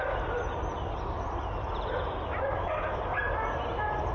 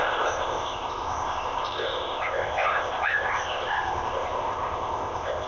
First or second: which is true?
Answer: first